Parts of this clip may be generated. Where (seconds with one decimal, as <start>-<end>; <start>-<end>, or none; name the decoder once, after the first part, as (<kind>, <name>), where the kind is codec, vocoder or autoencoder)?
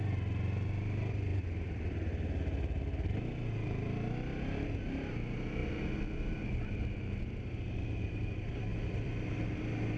1.3-2.1 (vocoder, BigVGAN v2); 8.7-9.6